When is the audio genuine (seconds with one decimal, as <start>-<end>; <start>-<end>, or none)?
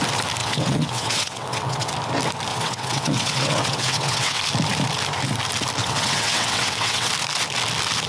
0.0-0.4; 1.9-2.5; 4.4-5.8; 7.1-8.1